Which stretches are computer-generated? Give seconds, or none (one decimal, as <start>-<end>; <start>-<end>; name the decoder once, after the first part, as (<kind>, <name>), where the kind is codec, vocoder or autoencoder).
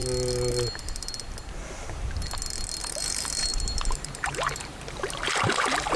2.8-6.0 (vocoder, BigVGAN v2)